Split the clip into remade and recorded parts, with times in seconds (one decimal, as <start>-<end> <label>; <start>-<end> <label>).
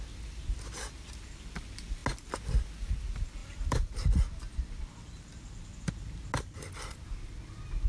0.0-3.4 recorded; 3.4-5.9 remade; 5.9-7.9 recorded